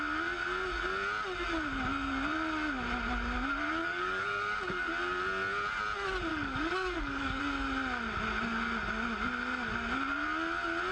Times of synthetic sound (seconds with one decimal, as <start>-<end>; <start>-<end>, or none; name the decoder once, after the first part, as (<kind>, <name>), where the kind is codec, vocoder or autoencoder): 3.8-4.9 (codec, DAC); 6.3-7.4